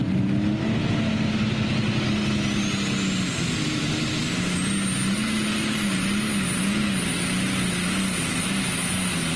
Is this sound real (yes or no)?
yes